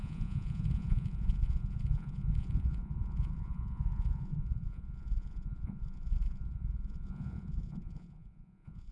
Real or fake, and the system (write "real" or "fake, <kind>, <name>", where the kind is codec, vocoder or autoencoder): fake, vocoder, Vocos